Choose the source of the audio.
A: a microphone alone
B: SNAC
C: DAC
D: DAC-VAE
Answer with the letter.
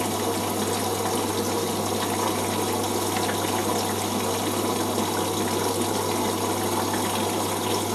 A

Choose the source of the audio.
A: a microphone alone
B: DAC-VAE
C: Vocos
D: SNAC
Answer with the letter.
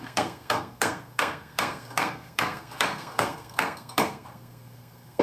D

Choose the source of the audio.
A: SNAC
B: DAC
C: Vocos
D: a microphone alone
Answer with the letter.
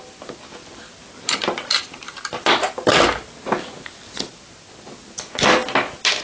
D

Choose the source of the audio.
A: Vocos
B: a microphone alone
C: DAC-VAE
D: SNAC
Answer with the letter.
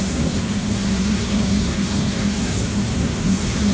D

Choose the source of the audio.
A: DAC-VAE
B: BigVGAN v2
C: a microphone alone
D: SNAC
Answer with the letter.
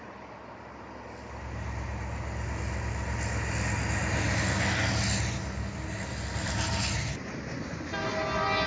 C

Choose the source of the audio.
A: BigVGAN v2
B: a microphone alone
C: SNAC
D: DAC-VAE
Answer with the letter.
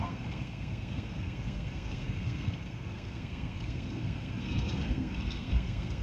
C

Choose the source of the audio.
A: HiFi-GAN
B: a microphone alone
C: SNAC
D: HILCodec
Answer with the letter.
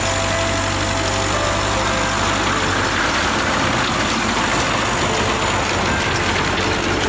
B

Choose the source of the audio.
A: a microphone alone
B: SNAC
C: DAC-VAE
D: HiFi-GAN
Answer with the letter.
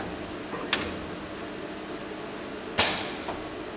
A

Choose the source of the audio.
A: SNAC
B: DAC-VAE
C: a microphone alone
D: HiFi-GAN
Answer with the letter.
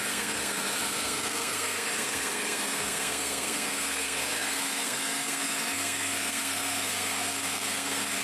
A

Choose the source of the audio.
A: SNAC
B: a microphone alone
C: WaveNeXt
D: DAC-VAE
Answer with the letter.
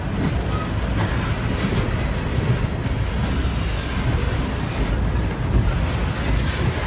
B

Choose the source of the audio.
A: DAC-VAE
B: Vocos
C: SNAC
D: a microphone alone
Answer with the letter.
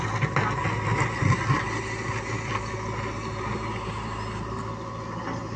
D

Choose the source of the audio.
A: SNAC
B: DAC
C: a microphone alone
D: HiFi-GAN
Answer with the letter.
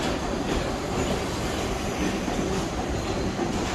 C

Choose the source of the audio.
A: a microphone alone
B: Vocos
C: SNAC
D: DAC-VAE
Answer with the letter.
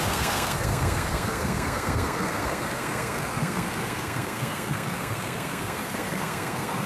C